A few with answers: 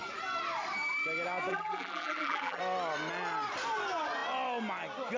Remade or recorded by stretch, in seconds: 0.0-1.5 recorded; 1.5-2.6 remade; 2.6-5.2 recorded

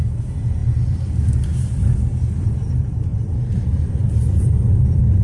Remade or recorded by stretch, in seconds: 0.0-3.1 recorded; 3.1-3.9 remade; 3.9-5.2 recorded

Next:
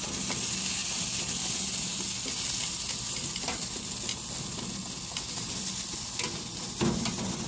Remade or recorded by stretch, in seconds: 0.0-7.5 recorded

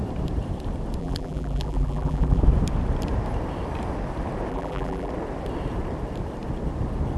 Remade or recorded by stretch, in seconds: 0.0-1.0 recorded; 1.0-2.4 remade; 2.4-4.5 recorded; 4.5-5.1 remade; 5.1-7.2 recorded

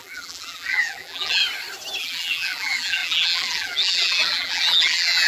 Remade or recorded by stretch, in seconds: 0.0-1.4 remade; 1.4-2.0 recorded; 2.0-5.3 remade

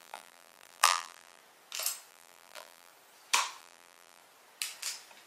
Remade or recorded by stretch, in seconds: 0.0-1.4 remade; 1.4-2.1 recorded; 2.1-2.9 remade; 2.9-3.6 recorded; 3.6-4.2 remade; 4.2-5.3 recorded

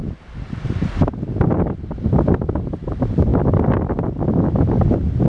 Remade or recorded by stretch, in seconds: 0.0-5.3 recorded

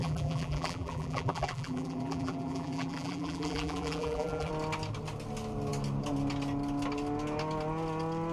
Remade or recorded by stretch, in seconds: 0.0-4.5 remade; 4.5-8.3 recorded